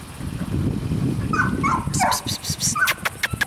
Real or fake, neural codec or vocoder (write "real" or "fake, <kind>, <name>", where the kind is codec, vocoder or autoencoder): real